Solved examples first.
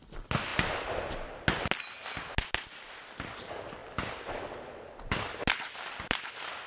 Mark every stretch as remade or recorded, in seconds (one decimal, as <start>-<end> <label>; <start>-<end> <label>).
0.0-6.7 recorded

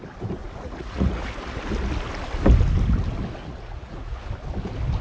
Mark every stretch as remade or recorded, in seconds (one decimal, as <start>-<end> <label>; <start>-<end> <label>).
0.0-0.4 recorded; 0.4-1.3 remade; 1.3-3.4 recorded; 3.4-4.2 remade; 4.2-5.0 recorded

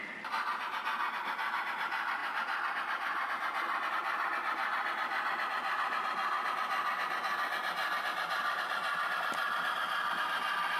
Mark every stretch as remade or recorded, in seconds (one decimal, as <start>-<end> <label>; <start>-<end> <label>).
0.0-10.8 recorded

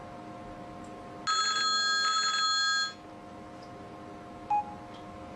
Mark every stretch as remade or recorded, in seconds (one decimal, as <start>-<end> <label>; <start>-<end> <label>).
0.0-5.4 recorded

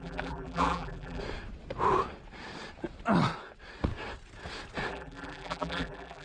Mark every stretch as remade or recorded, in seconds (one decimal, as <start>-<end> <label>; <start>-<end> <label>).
0.0-1.2 remade; 1.2-4.9 recorded; 4.9-6.2 remade

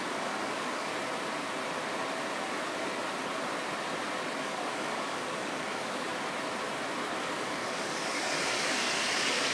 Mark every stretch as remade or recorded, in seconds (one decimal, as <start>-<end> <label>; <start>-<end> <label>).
0.0-0.9 remade; 0.9-4.4 recorded; 4.4-6.1 remade; 6.1-7.2 recorded; 7.2-9.5 remade